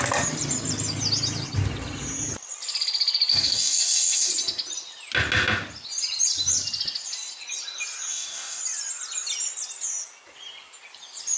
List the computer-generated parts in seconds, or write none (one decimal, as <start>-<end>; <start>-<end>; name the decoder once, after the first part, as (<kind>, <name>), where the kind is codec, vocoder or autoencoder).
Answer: 3.3-4.3 (codec, DAC); 8.1-8.6